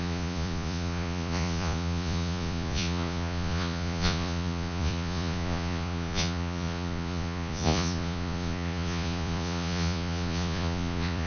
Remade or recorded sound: remade